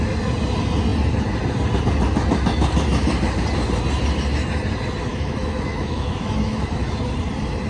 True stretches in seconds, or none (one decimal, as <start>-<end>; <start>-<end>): 0.0-5.1; 7.0-7.7